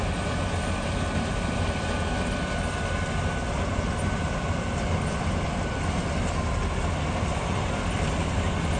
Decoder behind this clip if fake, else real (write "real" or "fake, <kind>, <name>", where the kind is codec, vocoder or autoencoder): real